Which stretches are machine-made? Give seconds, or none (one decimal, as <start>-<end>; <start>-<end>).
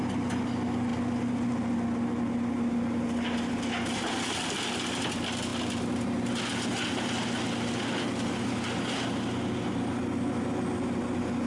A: none